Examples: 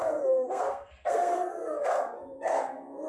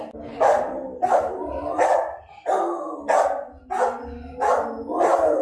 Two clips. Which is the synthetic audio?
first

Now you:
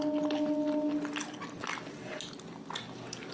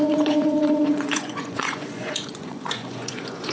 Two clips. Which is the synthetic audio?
second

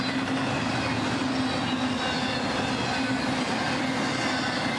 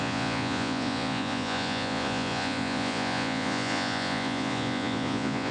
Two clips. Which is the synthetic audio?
second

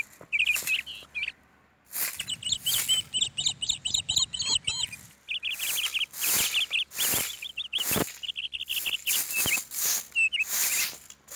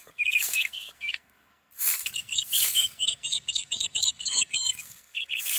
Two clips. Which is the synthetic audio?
second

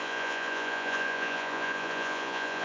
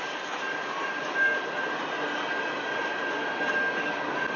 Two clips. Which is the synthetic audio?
first